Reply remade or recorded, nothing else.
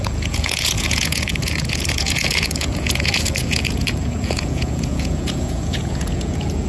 remade